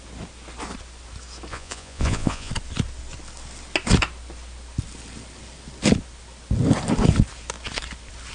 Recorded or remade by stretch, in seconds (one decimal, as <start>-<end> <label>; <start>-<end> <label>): 0.0-1.5 recorded; 1.5-2.5 remade; 2.5-8.3 recorded